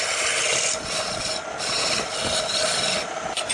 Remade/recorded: recorded